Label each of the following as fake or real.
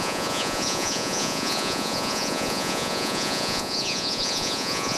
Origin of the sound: fake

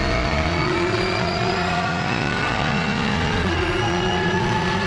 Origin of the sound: fake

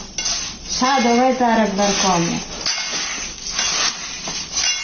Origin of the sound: real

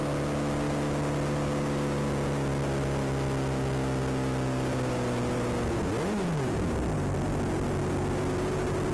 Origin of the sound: real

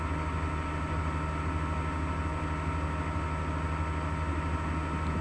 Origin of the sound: real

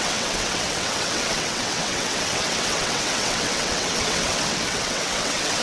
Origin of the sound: fake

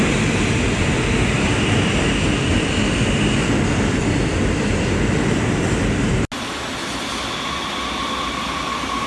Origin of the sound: real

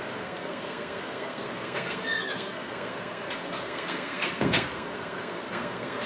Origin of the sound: fake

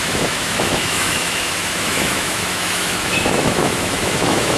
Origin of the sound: fake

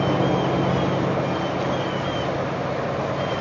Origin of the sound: real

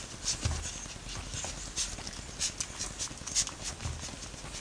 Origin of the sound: real